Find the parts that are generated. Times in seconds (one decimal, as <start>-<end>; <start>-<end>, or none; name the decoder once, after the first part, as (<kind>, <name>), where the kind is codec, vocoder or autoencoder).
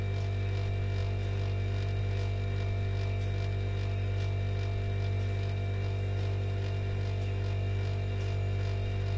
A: none